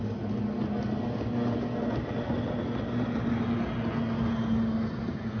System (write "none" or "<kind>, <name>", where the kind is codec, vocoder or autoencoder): none